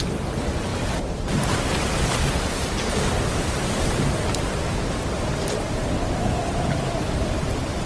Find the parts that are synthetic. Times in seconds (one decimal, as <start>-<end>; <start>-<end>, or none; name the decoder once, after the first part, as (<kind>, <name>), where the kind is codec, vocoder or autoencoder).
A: 0.7-1.6 (vocoder, BigVGAN v2)

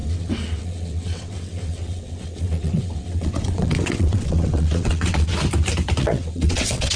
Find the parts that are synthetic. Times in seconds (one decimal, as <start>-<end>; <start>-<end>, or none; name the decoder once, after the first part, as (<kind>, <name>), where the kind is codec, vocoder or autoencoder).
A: 0.0-5.3 (vocoder, WaveNeXt); 6.0-7.0